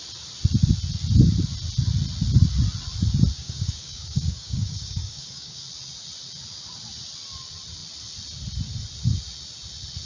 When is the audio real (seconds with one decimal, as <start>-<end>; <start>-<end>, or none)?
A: 0.0-3.4; 5.6-10.1

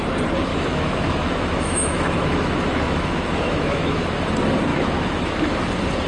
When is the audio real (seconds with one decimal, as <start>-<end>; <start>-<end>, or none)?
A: 0.0-0.5; 4.2-4.7; 5.6-6.1

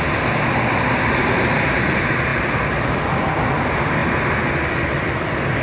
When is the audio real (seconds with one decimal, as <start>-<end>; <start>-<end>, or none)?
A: 0.0-5.6

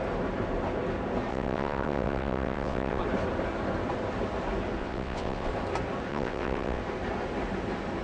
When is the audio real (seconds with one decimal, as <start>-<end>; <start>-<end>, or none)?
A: 0.0-1.3; 3.0-4.8; 5.5-6.1; 6.8-8.0